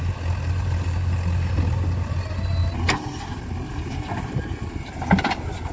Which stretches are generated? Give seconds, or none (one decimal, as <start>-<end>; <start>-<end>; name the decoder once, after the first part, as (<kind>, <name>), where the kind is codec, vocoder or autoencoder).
none